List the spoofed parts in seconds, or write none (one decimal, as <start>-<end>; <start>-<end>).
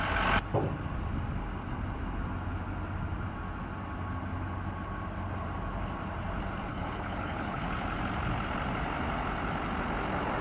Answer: 6.7-7.6